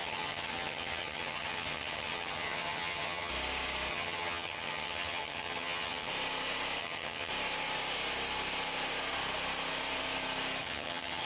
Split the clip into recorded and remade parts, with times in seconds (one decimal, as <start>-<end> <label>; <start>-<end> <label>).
0.0-3.3 remade; 3.3-3.9 recorded; 3.9-6.1 remade; 6.1-6.8 recorded; 6.8-7.3 remade; 7.3-10.6 recorded; 10.6-11.3 remade